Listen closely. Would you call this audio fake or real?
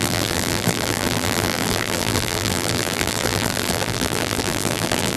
fake